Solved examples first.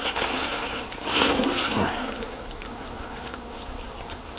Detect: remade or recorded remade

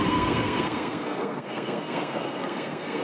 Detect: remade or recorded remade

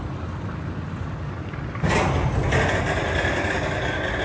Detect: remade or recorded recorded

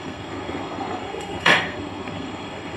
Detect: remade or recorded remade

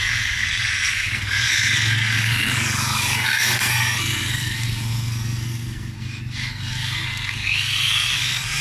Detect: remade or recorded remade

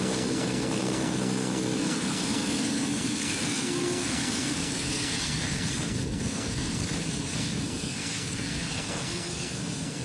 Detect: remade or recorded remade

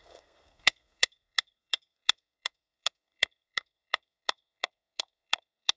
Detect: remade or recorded remade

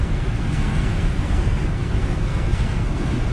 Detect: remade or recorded remade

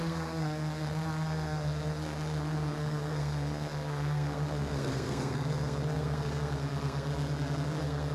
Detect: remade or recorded remade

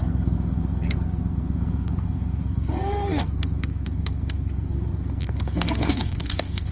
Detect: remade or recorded remade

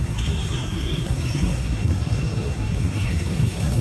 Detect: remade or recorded remade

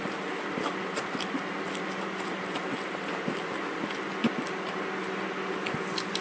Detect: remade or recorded recorded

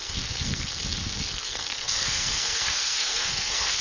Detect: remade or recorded remade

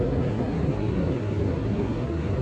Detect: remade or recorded remade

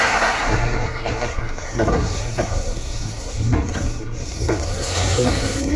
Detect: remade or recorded remade